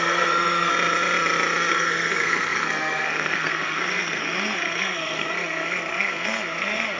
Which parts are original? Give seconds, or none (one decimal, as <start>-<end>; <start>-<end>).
0.7-1.7